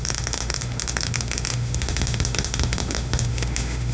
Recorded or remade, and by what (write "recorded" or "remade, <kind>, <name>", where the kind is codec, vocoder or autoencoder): remade, autoencoder, DAC-VAE